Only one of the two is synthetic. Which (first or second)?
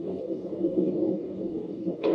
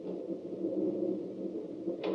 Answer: first